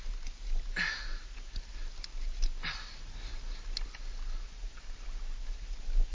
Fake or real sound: real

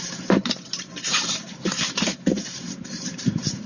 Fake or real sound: fake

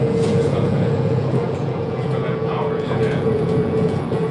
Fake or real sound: fake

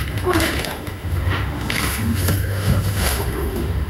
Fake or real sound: fake